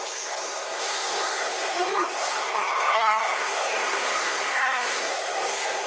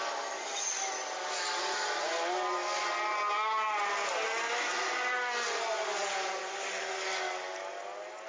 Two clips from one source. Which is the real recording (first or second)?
second